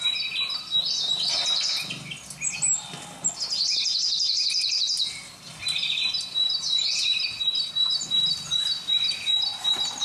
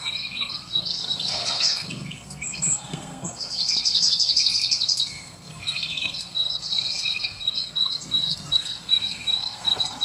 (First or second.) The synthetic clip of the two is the second